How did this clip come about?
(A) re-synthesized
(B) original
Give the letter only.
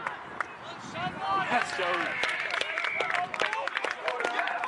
B